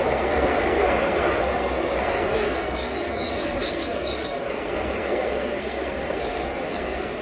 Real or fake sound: fake